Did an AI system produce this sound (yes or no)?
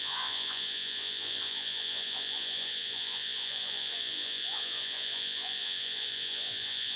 yes